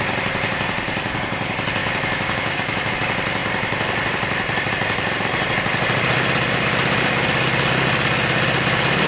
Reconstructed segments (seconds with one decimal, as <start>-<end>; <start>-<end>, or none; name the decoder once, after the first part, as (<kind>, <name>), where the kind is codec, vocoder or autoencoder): 1.8-2.9 (autoencoder, DAC-VAE)